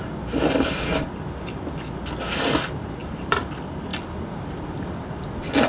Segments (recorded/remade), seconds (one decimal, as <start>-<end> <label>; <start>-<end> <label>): 0.0-3.0 recorded; 3.0-3.5 remade; 3.5-5.7 recorded